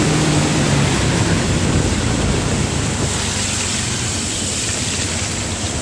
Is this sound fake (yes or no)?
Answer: yes